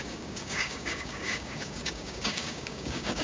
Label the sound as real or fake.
fake